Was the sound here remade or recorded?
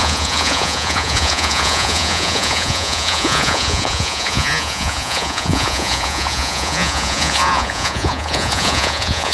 remade